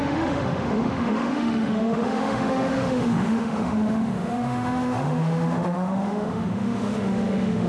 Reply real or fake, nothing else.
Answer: fake